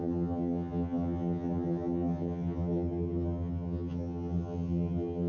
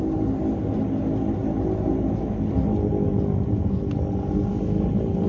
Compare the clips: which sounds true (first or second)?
second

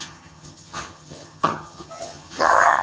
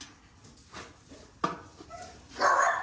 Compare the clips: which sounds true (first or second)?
second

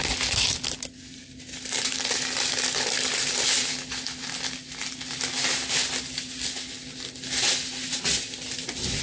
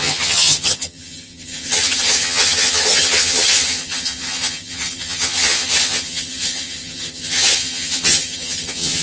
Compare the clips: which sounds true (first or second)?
first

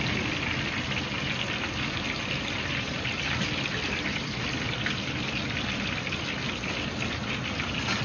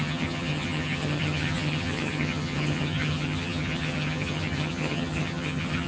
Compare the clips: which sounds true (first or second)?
first